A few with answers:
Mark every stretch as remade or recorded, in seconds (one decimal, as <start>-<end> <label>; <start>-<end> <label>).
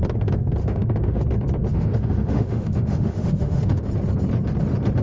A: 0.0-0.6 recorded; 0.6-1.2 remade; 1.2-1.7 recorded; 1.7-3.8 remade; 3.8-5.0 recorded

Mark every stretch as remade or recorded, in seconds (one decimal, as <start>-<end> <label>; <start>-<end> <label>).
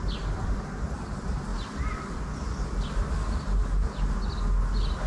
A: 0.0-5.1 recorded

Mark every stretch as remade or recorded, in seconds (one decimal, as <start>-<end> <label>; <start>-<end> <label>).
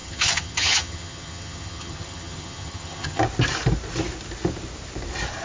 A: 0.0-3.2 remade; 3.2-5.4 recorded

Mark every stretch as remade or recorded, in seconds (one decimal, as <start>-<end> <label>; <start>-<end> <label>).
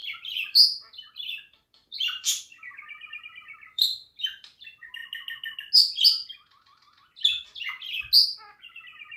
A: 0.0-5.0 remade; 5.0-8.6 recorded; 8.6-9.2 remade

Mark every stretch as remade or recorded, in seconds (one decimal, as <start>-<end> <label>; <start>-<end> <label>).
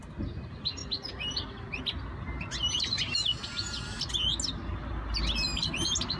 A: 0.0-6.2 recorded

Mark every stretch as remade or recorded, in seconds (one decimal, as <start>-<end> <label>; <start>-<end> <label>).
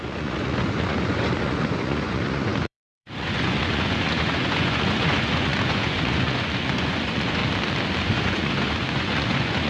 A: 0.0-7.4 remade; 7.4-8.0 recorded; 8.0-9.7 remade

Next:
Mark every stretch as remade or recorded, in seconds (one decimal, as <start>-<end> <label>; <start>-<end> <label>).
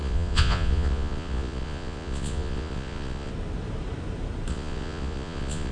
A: 0.0-3.3 remade; 3.3-4.5 recorded; 4.5-5.7 remade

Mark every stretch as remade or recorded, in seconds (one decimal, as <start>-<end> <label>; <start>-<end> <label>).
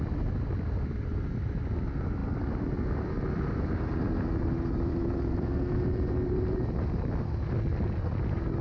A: 0.0-2.2 recorded; 2.2-6.3 remade; 6.3-8.6 recorded